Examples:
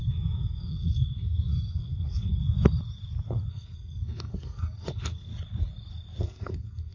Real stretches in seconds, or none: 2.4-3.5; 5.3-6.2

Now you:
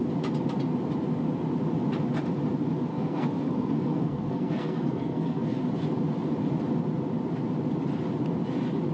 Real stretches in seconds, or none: 0.0-2.9; 5.6-8.9

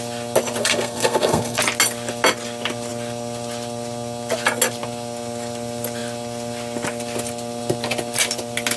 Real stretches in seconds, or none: 0.0-0.6; 1.6-8.8

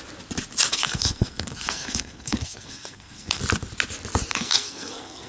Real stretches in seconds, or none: 0.0-0.7; 3.4-4.3